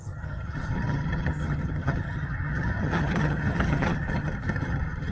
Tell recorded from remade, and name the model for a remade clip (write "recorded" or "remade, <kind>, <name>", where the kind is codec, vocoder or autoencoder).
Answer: remade, vocoder, HiFi-GAN